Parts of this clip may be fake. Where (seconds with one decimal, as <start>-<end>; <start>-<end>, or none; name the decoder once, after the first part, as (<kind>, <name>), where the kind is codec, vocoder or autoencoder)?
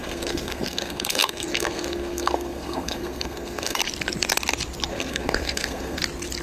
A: 0.0-3.8 (codec, SNAC); 4.9-6.0